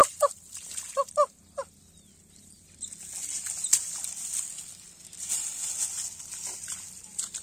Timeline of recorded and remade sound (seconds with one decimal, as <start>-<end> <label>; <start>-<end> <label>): 0.0-7.4 recorded